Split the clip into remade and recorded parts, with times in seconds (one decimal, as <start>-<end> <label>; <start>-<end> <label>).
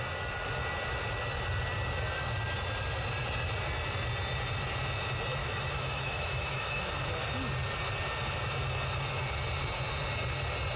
0.0-5.4 recorded; 5.4-6.9 remade; 6.9-10.8 recorded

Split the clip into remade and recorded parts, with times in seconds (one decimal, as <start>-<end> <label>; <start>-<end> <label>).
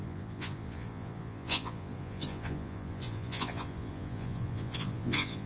0.0-5.5 remade